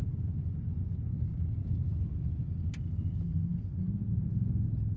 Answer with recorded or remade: recorded